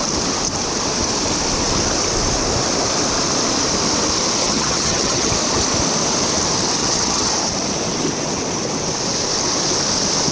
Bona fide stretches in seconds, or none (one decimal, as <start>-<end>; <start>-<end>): 0.0-4.4; 5.3-6.8; 7.3-10.3